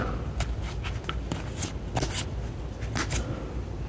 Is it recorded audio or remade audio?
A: recorded